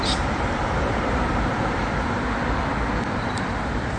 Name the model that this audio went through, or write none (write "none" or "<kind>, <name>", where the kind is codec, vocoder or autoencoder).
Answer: vocoder, BigVGAN v2